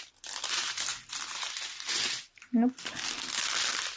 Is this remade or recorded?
recorded